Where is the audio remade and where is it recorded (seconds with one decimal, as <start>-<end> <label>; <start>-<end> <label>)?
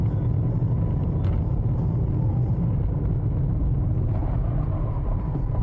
0.0-4.2 recorded; 4.2-5.6 remade